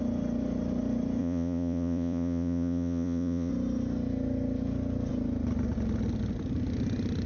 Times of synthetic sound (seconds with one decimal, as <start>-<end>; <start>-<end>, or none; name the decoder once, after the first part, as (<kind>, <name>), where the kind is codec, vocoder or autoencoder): 1.2-3.5 (vocoder, Vocos)